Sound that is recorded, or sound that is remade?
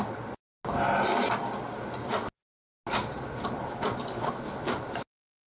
recorded